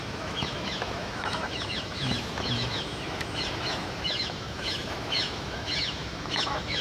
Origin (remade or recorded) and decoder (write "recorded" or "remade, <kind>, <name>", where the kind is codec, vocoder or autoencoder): remade, autoencoder, DAC-VAE